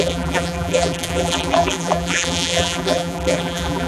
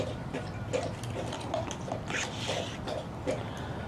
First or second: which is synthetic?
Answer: first